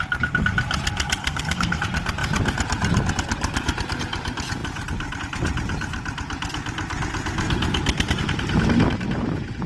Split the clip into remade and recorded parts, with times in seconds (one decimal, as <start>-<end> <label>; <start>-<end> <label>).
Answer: 0.0-1.2 recorded; 1.2-1.8 remade; 1.8-9.7 recorded